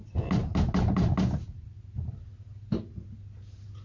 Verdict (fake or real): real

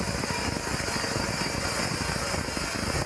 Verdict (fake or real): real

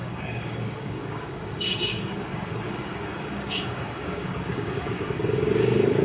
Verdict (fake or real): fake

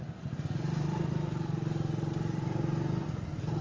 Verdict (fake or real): real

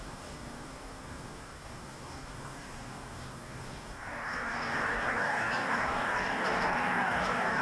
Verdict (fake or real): fake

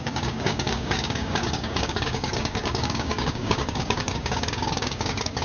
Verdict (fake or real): fake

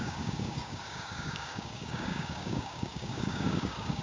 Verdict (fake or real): fake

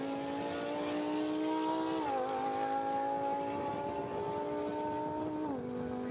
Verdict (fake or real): real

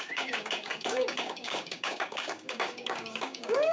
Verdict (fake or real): fake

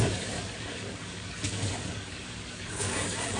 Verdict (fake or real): fake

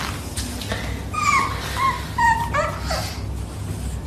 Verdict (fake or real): real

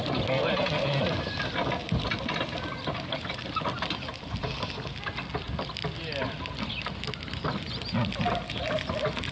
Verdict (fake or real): real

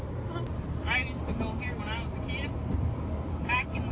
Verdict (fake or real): real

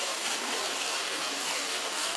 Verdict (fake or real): fake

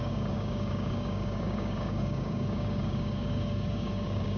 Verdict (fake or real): fake